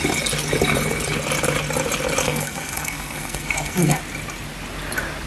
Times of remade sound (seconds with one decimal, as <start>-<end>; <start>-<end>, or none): 2.2-4.0